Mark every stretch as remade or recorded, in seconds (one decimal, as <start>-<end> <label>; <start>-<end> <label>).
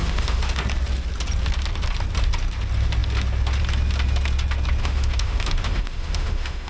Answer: 0.0-0.6 remade; 0.6-4.8 recorded; 4.8-6.7 remade